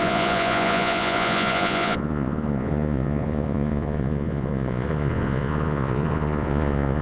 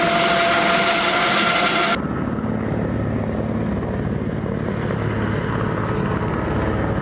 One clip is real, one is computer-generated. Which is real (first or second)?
second